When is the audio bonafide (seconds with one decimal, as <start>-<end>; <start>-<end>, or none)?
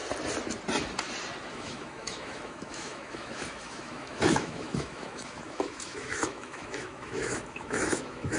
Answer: 0.0-1.5